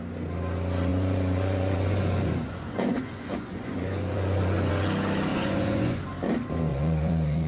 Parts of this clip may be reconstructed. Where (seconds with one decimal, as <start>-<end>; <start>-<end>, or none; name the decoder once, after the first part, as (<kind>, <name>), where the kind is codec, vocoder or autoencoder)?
0.9-4.7 (vocoder, Vocos); 5.3-6.0; 6.7-7.5